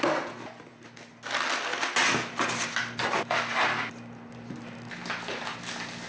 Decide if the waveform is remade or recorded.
recorded